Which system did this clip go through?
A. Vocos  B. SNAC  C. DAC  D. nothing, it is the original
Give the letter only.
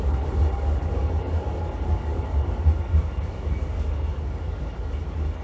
C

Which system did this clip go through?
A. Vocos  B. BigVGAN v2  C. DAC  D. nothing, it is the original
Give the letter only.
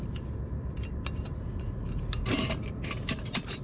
D